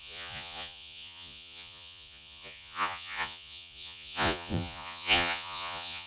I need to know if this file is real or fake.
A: fake